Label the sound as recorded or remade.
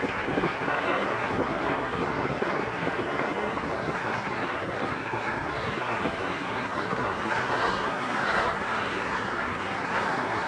remade